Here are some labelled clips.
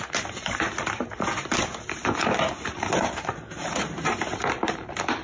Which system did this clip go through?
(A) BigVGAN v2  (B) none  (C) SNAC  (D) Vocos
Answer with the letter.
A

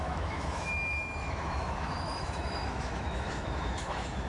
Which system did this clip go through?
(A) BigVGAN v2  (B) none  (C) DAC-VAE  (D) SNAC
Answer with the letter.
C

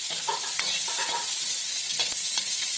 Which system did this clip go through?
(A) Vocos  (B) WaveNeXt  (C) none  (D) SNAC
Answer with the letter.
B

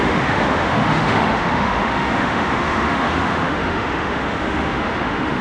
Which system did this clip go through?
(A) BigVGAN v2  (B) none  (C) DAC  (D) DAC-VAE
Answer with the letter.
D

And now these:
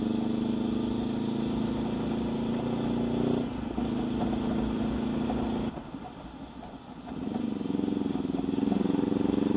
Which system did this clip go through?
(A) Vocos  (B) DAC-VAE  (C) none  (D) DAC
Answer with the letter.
C